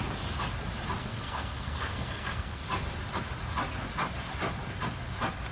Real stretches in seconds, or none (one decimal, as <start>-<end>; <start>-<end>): 0.0-1.0; 2.6-5.5